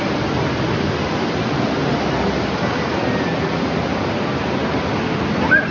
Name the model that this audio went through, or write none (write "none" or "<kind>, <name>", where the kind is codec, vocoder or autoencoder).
none